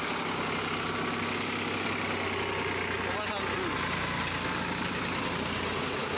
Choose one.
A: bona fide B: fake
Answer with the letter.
A